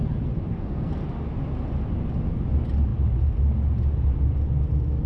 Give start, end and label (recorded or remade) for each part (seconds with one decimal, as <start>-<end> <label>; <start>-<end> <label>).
0.0-0.5 recorded; 0.5-1.0 remade; 1.0-5.1 recorded